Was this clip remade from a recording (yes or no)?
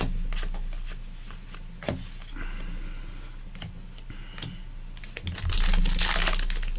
no